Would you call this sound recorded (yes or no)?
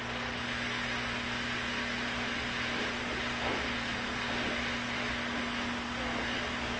yes